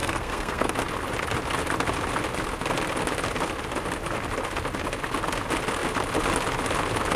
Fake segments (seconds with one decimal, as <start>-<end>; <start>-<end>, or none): 0.0-0.7